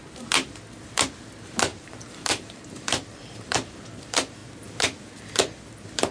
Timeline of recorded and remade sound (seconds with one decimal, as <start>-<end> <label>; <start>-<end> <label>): 0.0-1.7 recorded; 1.7-3.8 remade; 3.8-6.1 recorded